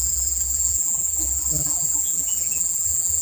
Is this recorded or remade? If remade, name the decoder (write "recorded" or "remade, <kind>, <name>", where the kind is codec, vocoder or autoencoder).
remade, vocoder, BigVGAN v2